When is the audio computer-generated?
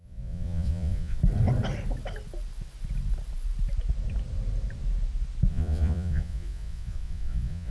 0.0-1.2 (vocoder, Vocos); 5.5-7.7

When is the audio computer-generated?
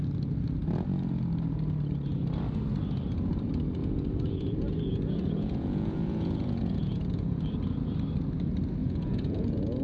3.8-7.5 (vocoder, Vocos); 8.8-9.8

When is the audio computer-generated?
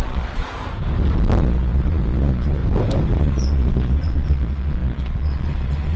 0.0-0.4 (vocoder, Vocos); 1.4-2.6; 3.2-6.0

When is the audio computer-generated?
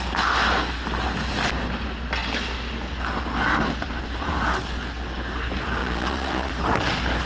5.8-6.5 (vocoder, Vocos)